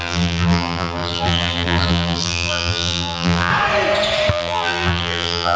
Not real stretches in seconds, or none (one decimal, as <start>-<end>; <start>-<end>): 0.0-3.5; 4.3-5.6